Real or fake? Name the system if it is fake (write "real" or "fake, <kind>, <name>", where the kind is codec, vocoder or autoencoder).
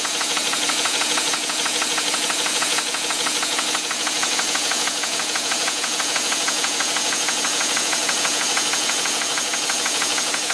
fake, vocoder, Vocos